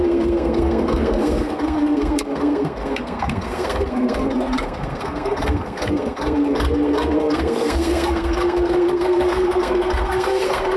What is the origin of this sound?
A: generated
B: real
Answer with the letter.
A